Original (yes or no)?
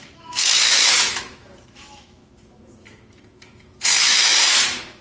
no